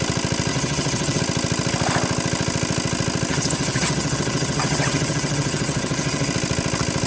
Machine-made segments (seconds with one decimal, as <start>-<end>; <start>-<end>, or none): 0.5-1.2; 3.3-6.3